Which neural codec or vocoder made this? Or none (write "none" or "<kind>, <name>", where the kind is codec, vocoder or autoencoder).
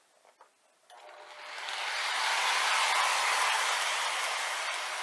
none